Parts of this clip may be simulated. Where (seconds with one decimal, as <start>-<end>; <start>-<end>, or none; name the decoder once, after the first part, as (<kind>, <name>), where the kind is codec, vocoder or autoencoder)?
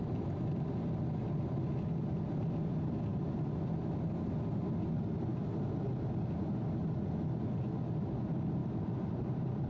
8.6-9.7 (vocoder, BigVGAN v2)